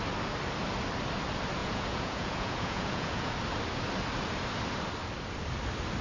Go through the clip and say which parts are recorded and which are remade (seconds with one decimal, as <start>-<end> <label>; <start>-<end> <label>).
0.0-1.6 recorded; 1.6-3.3 remade; 3.3-6.0 recorded